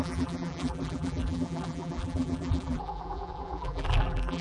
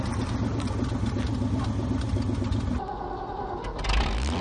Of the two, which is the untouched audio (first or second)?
second